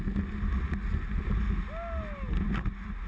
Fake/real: real